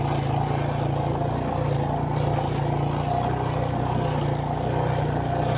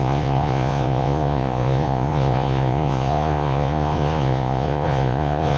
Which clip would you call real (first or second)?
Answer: first